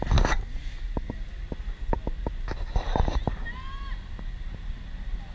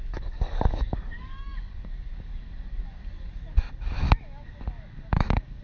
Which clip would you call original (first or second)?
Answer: first